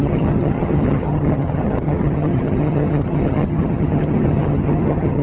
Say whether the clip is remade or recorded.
remade